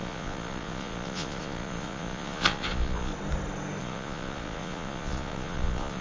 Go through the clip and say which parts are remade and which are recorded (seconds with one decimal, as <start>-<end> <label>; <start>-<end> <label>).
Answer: 0.0-3.1 remade; 3.1-3.8 recorded; 3.8-6.0 remade